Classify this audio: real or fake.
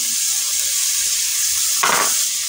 fake